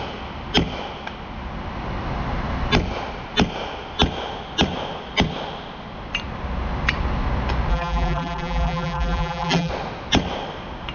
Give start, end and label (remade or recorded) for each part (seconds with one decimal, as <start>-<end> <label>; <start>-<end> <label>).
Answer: 0.0-7.7 recorded; 7.7-9.7 remade; 9.7-10.9 recorded